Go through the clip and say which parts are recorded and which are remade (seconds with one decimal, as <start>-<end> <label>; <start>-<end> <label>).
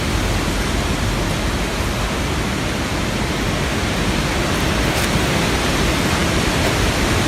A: 0.0-7.3 recorded